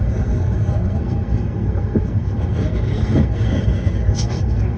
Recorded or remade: remade